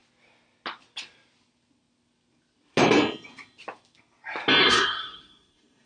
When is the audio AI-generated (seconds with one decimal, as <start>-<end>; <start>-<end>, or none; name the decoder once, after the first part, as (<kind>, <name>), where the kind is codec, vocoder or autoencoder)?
4.6-5.9 (codec, SNAC)